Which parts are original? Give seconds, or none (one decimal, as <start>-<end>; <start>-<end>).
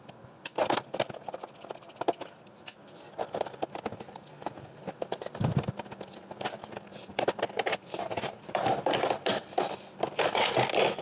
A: 0.0-7.1; 9.3-11.0